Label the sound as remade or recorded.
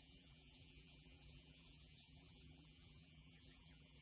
remade